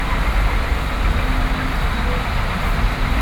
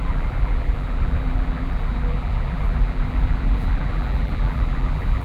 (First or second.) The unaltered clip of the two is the first